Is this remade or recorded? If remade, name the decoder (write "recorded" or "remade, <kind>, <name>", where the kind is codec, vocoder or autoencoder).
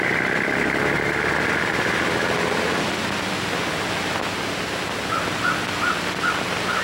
recorded